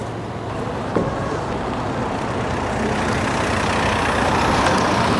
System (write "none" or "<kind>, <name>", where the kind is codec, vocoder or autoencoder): none